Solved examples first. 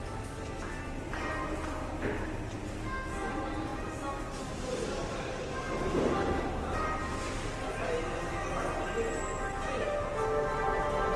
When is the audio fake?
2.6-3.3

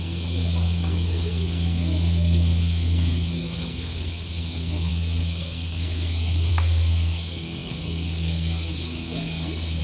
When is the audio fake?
0.0-9.8